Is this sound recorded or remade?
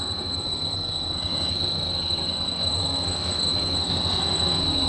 remade